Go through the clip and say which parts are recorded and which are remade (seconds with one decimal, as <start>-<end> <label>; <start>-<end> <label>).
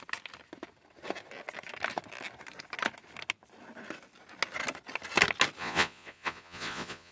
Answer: 0.0-5.6 recorded; 5.6-7.1 remade